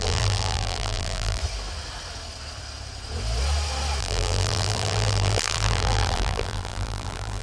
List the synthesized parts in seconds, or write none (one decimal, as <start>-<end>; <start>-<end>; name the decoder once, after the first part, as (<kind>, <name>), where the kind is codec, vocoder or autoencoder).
0.0-1.4 (vocoder, BigVGAN v2); 4.0-7.4